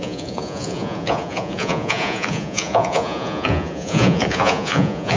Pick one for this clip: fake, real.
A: fake